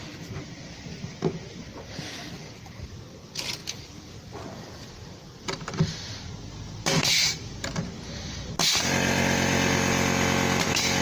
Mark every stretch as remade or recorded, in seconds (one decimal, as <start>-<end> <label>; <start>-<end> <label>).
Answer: 0.0-11.0 recorded